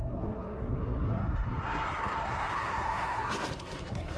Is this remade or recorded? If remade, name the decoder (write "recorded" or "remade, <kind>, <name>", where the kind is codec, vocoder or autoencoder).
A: remade, codec, SNAC